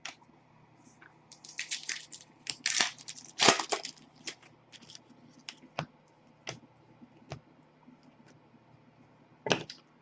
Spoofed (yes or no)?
no